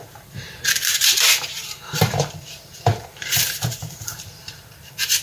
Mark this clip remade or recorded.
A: remade